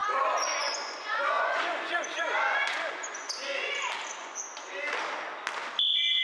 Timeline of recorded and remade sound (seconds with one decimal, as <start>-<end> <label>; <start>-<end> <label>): 0.0-3.7 remade; 3.7-4.2 recorded; 4.2-4.7 remade; 4.7-6.2 recorded